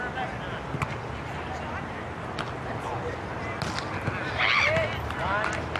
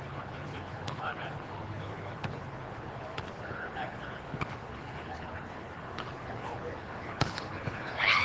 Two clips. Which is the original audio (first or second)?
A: first